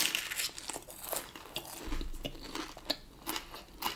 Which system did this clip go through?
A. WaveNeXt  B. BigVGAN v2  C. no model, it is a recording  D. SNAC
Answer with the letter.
C